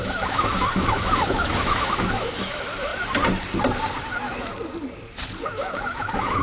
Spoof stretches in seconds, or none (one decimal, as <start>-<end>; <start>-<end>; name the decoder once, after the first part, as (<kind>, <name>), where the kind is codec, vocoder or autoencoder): 0.0-2.9 (autoencoder, DAC-VAE); 5.4-6.4